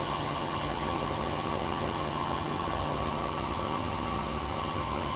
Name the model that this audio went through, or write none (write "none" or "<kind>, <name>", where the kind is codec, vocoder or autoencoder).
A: vocoder, HiFi-GAN